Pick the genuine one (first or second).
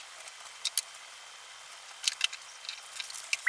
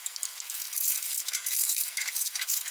first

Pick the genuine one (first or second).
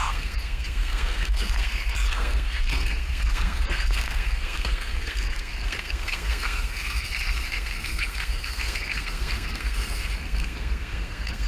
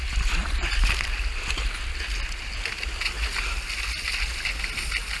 second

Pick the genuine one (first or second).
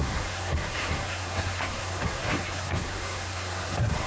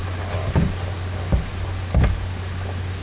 second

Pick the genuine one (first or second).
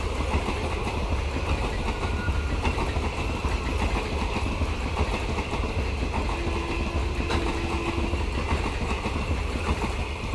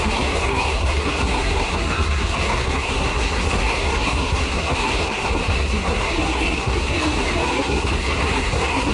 first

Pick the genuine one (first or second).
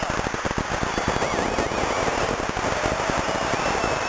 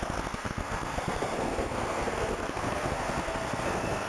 first